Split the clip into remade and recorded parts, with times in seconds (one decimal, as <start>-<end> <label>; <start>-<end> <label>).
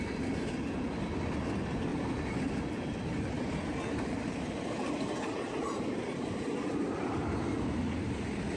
0.0-8.6 recorded